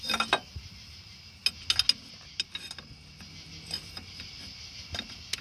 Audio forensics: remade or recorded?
recorded